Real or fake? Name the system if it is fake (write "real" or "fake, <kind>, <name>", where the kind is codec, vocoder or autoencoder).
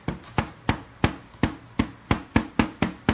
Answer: real